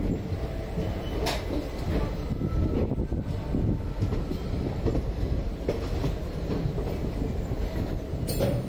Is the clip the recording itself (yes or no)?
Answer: yes